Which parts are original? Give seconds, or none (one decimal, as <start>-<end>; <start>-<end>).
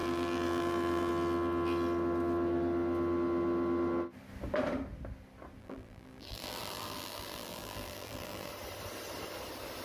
1.1-5.6; 8.5-9.8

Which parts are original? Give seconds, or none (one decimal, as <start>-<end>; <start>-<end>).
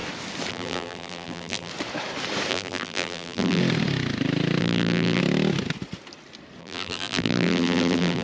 0.0-0.5; 1.7-2.5; 3.6-4.6; 5.2-6.6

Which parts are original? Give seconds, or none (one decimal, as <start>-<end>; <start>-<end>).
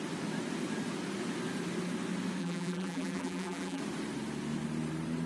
0.0-2.4; 3.8-5.3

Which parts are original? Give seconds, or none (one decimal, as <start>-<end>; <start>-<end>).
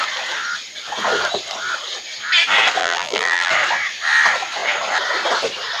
0.0-2.8; 3.5-5.8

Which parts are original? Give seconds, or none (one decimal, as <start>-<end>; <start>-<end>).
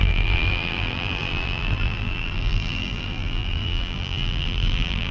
none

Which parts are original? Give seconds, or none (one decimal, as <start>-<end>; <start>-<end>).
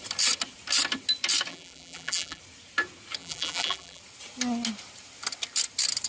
0.0-1.5; 2.4-3.2; 4.0-6.1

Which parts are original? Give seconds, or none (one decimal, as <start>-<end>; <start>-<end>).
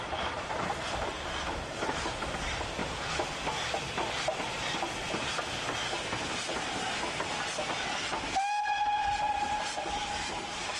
0.0-2.8; 4.1-10.8